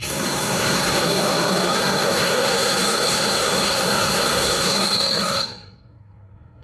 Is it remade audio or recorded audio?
remade